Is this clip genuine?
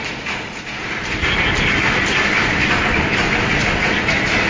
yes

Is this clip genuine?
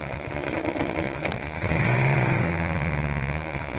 no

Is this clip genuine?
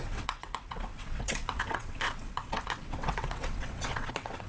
no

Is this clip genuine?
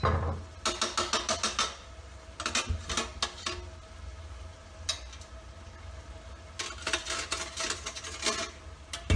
yes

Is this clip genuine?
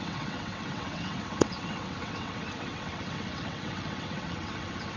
no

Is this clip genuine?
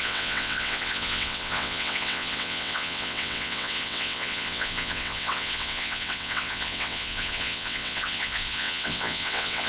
no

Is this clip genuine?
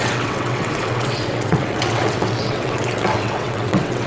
no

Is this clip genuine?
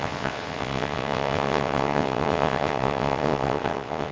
no